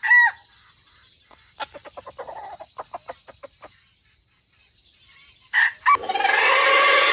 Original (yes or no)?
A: yes